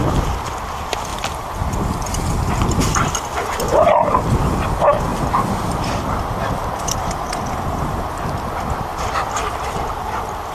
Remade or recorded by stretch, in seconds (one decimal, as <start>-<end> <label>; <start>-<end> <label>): 0.0-1.1 recorded; 1.1-4.1 remade; 4.1-8.9 recorded; 8.9-9.9 remade; 9.9-10.5 recorded